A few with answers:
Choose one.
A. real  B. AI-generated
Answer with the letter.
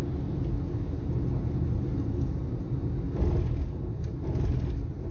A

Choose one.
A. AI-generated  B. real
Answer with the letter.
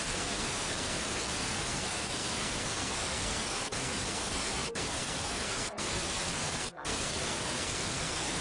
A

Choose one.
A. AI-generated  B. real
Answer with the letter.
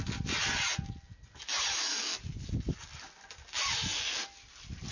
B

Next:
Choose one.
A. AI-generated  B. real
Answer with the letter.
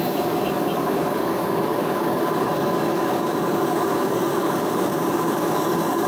A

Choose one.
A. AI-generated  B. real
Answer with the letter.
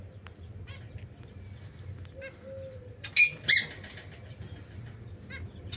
B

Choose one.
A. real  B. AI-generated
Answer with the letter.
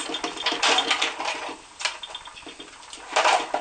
A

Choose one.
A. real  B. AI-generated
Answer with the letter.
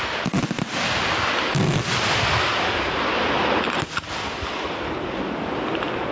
A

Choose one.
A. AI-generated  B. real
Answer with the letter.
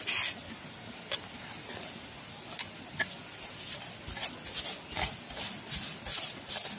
B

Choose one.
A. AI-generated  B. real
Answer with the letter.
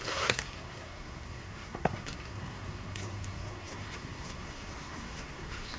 A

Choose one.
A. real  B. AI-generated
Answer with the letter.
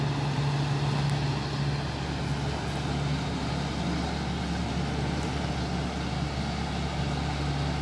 A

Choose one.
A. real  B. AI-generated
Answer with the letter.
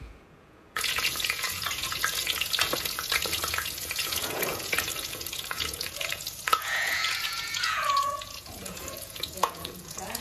B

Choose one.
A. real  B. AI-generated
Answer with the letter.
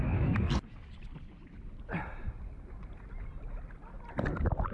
A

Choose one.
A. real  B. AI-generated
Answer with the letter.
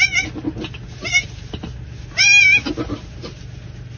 A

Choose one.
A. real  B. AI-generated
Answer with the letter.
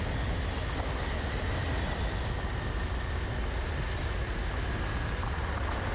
A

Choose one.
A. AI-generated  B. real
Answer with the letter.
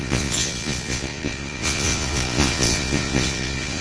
A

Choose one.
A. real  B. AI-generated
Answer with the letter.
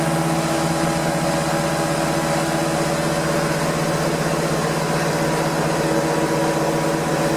A